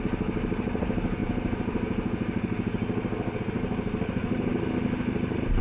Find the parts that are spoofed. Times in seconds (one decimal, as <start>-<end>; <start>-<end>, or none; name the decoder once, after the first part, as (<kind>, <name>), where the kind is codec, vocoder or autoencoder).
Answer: none

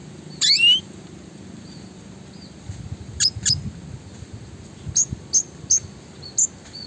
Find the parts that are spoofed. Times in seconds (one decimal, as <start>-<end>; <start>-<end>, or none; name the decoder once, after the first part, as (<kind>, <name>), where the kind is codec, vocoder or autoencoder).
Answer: none

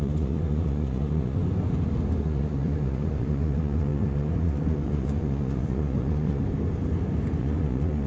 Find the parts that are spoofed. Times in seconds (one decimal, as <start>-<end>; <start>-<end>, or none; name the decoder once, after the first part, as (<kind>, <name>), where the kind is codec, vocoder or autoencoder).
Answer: 0.0-1.4 (vocoder, Vocos); 2.2-6.4; 7.4-8.1

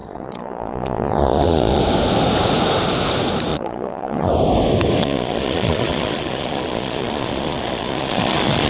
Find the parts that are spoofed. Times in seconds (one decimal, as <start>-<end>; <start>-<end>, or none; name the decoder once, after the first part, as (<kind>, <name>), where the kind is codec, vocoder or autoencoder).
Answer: 0.0-1.8 (vocoder, Vocos); 3.5-4.3; 5.0-8.7

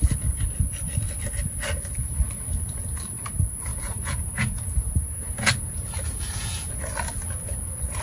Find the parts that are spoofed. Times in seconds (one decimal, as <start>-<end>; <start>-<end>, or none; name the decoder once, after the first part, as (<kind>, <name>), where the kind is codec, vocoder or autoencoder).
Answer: 3.7-6.8 (vocoder, Vocos)